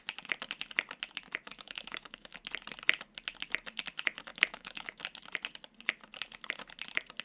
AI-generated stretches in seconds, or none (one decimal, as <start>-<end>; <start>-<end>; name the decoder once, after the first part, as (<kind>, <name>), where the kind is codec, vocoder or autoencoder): 1.5-2.4 (autoencoder, DAC-VAE); 4.3-5.0